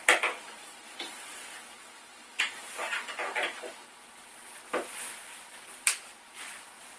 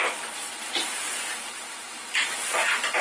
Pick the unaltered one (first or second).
first